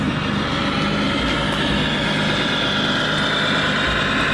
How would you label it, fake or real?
real